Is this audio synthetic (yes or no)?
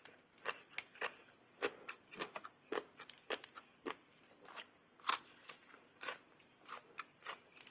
yes